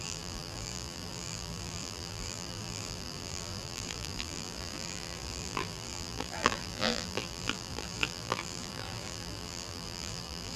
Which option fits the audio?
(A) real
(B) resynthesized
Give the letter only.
B